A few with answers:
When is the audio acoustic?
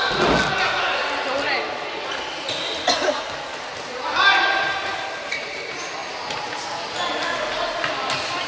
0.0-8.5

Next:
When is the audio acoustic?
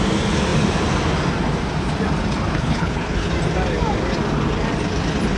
0.0-2.5; 3.3-5.4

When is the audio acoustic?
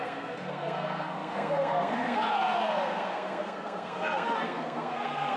none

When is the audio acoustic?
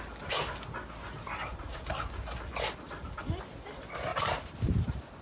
0.0-1.5; 2.0-4.1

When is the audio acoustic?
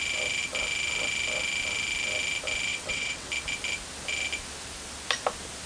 0.0-2.7; 3.3-5.7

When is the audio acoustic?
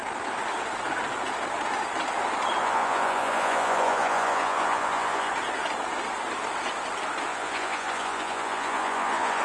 0.0-2.6; 5.3-7.3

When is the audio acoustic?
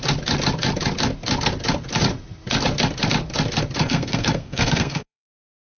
0.0-3.8